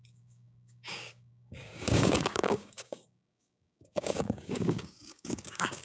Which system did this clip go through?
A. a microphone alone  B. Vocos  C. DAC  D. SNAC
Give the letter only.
C